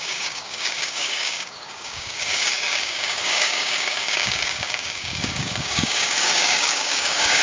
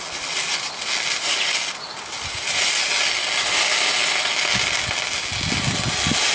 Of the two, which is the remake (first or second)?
first